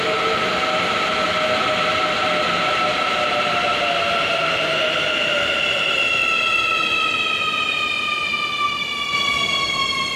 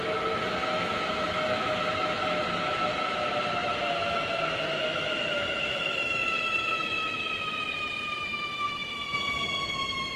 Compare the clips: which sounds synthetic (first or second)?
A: second